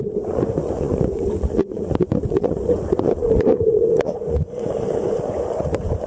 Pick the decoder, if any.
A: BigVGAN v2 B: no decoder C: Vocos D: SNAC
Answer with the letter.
C